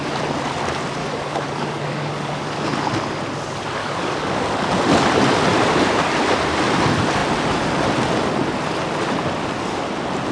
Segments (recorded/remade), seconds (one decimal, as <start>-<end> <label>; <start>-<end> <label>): 0.0-1.0 recorded; 1.0-2.6 remade; 2.6-3.8 recorded; 3.8-4.7 remade; 4.7-10.3 recorded